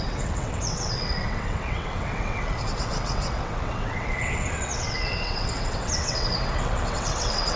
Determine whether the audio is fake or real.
fake